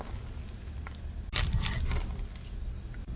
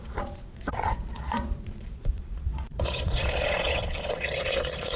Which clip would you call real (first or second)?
first